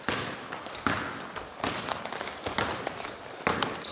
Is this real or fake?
real